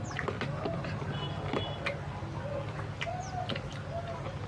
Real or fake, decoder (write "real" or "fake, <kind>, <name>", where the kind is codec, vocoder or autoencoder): real